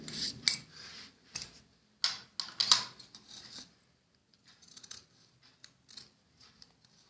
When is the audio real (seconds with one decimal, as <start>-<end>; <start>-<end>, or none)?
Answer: 0.0-4.2; 5.1-7.1